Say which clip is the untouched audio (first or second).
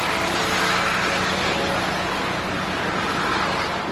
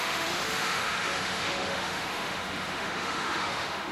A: first